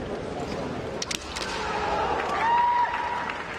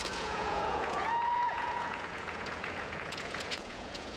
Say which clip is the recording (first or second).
first